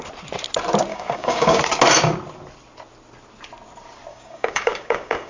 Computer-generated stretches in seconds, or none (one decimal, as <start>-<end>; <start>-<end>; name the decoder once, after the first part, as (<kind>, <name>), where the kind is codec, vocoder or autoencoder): 0.9-1.6 (codec, DAC); 4.1-5.3